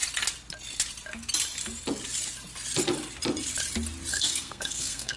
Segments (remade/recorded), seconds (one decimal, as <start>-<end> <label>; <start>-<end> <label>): 0.0-4.1 recorded; 4.1-5.2 remade